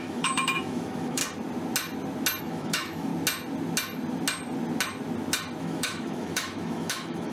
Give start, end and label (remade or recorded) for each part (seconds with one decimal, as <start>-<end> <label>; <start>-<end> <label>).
0.0-1.2 remade; 1.2-2.4 recorded; 2.4-3.1 remade; 3.1-5.6 recorded; 5.6-7.3 remade